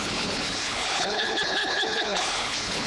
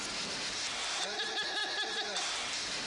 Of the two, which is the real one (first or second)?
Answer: second